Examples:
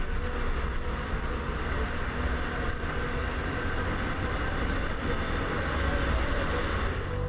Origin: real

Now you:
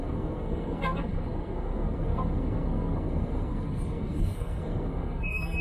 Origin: fake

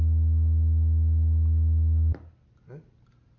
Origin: real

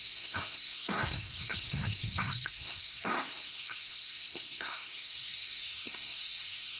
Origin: fake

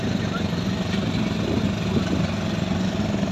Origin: real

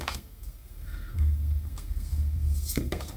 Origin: fake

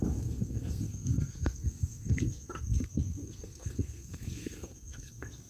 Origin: fake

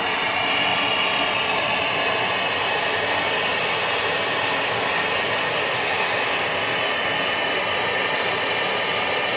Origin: real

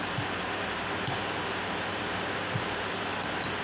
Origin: real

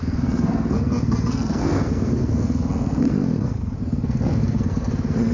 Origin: fake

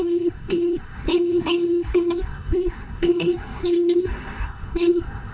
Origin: fake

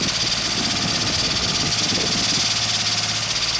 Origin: real